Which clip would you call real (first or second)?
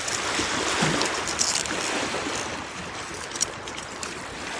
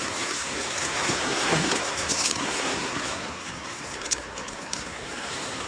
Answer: first